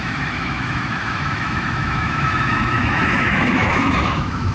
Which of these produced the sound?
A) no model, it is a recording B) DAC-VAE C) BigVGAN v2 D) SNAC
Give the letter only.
B